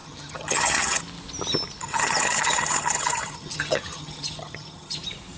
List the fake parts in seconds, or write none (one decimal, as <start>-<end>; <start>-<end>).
0.0-1.0; 1.8-5.0